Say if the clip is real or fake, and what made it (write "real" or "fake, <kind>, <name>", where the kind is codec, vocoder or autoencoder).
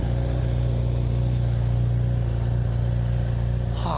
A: real